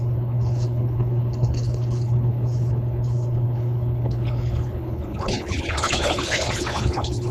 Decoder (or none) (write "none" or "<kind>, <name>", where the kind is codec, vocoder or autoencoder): codec, HILCodec